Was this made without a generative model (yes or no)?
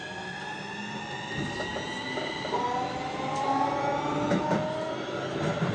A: yes